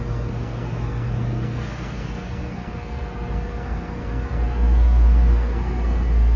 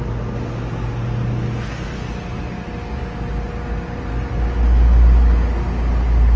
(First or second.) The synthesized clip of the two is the first